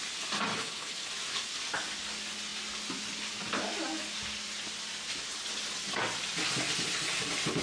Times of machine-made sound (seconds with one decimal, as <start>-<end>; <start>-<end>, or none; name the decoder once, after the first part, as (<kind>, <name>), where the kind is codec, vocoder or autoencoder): 0.5-1.1 (codec, HILCodec)